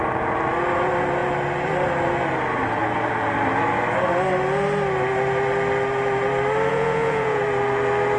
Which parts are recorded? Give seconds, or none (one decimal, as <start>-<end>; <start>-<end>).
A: 0.0-6.7; 7.4-8.2